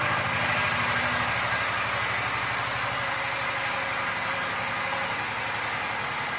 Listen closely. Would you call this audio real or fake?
real